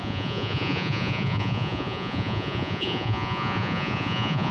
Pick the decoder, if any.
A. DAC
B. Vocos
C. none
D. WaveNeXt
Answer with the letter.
B